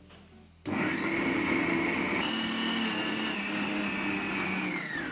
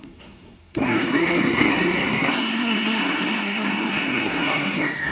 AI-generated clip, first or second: second